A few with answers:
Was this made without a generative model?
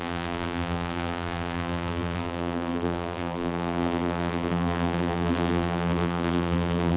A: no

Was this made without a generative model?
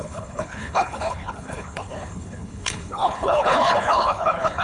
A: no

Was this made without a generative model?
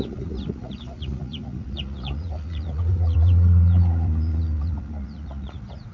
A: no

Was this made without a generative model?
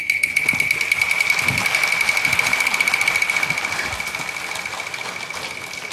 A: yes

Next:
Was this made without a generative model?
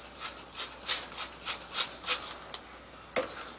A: yes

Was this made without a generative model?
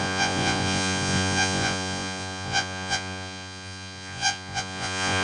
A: no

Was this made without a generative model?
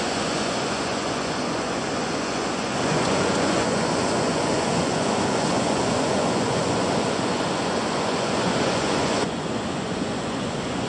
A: no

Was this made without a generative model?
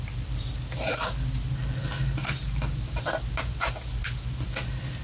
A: yes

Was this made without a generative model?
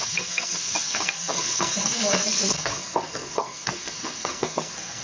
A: no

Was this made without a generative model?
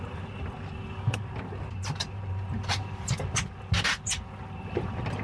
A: yes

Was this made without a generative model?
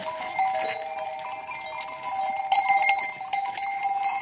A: yes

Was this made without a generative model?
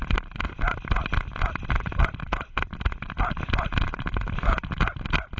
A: yes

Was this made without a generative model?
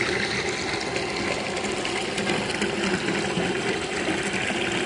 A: yes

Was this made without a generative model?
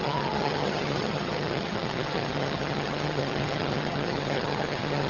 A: no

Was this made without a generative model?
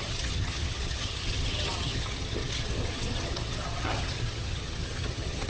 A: no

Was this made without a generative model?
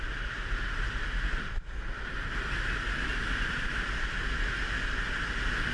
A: yes